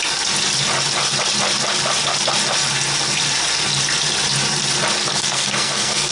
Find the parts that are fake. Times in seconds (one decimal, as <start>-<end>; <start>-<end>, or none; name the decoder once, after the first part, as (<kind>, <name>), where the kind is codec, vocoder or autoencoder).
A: 5.0-6.1 (codec, SNAC)